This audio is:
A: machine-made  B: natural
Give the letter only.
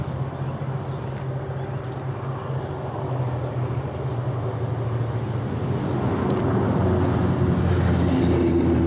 B